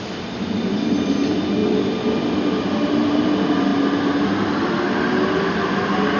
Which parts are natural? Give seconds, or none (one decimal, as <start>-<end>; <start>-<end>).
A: 0.0-6.2